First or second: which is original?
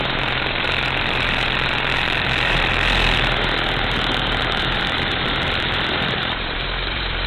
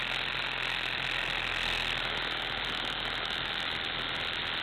second